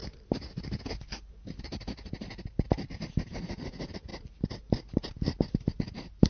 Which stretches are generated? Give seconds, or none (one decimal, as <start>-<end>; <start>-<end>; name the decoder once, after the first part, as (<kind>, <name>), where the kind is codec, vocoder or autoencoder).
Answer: 1.3-4.1 (vocoder, BigVGAN v2); 5.5-6.3